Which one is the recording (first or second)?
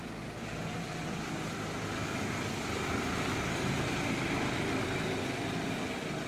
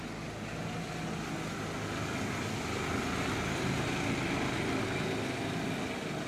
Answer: second